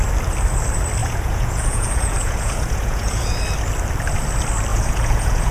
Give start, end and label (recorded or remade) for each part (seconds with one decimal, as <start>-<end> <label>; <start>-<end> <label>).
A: 0.0-1.0 recorded; 1.0-3.2 remade; 3.2-4.7 recorded; 4.7-5.5 remade